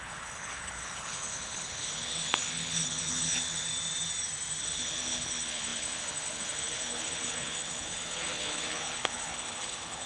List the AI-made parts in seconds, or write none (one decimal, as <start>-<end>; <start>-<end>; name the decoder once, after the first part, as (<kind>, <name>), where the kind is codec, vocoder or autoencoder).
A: 0.0-3.7 (codec, HILCodec); 4.6-10.1